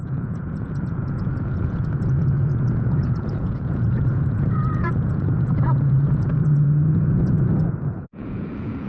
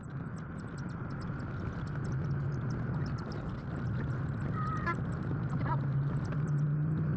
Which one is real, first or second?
second